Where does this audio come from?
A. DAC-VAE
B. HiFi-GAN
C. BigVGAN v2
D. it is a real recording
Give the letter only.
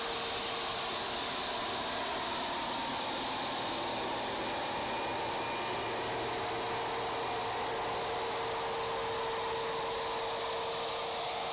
D